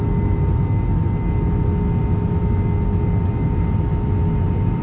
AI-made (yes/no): no